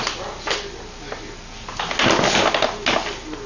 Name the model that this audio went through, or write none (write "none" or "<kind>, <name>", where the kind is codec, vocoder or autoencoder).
none